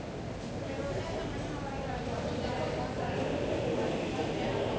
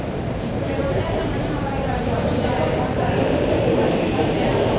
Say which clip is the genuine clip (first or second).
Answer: first